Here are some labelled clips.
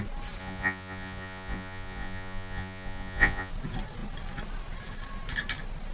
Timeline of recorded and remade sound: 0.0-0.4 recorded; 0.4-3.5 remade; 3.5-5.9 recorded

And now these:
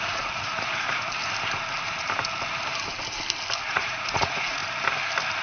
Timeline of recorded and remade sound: 0.0-1.2 remade; 1.2-3.6 recorded; 3.6-4.6 remade; 4.6-5.4 recorded

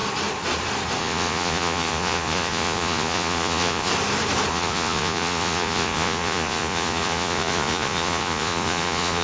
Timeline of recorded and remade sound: 0.0-1.0 recorded; 1.0-3.9 remade; 3.9-4.5 recorded; 4.5-9.2 remade

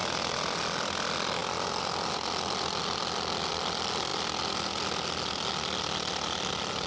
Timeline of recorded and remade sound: 0.0-6.9 recorded

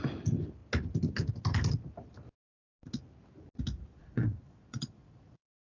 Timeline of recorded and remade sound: 0.0-3.9 recorded; 3.9-5.7 remade

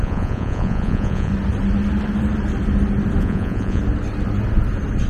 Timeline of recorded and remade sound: 0.0-1.3 remade; 1.3-3.2 recorded; 3.2-3.8 remade; 3.8-5.1 recorded